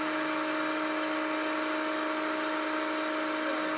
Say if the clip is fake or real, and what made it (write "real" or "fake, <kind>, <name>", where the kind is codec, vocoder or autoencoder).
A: real